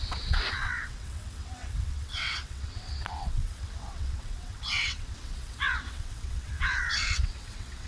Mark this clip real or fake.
fake